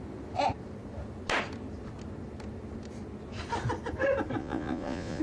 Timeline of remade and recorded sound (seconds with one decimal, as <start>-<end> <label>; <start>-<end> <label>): 0.0-4.4 recorded; 4.4-5.2 remade